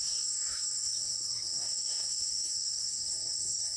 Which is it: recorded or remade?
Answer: remade